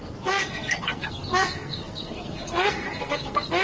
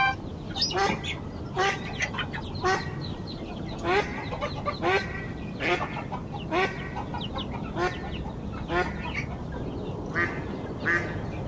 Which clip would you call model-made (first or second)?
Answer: first